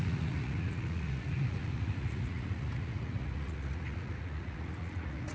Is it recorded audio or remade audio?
remade